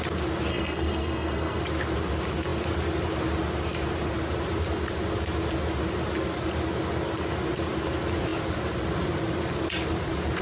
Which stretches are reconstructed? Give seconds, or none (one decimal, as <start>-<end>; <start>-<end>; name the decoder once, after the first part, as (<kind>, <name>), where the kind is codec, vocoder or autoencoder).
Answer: 0.5-1.6 (codec, SNAC)